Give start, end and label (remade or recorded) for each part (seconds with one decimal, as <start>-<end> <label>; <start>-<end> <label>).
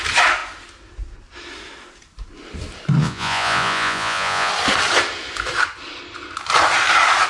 0.0-3.0 recorded; 3.0-4.5 remade; 4.5-7.3 recorded